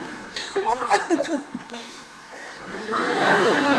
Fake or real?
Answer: fake